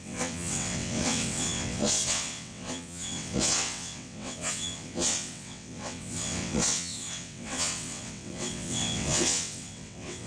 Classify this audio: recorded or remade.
remade